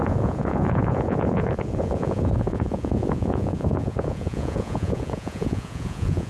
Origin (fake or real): fake